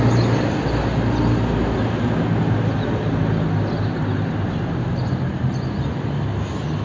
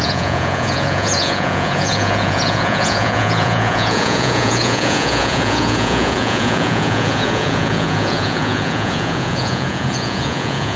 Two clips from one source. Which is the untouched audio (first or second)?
first